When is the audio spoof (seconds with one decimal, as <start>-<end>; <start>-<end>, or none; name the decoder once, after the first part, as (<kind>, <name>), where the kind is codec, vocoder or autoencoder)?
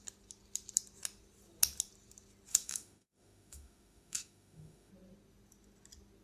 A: 2.5-4.9 (autoencoder, DAC-VAE)